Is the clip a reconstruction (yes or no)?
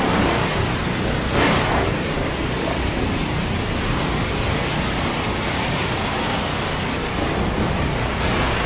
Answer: no